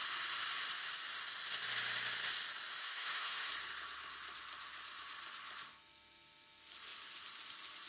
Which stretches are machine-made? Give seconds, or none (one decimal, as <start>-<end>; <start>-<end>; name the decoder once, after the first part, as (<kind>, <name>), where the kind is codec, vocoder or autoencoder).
2.8-3.5 (autoencoder, DAC-VAE)